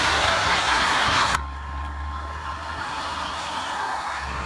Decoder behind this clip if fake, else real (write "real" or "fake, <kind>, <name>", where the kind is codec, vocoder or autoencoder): fake, codec, SNAC